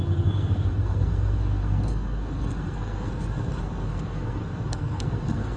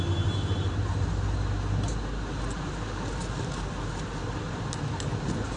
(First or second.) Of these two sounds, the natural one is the second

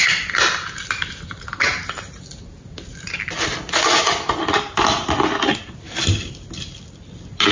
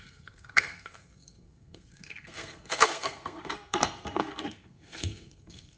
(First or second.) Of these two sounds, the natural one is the first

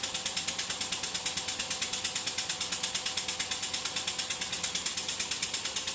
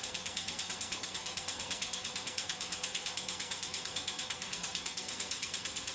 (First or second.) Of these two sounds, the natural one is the first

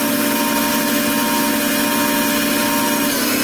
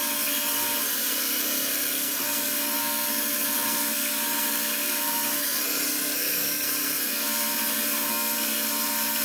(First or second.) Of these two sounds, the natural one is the first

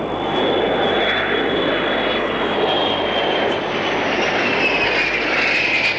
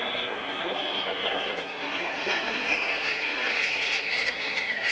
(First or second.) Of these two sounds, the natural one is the first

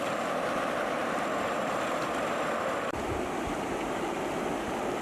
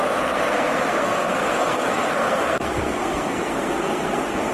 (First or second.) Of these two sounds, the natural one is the first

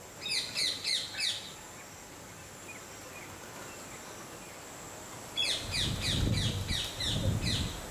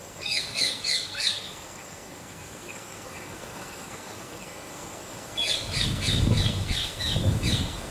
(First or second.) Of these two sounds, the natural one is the first